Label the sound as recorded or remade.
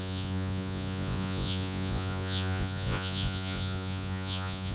remade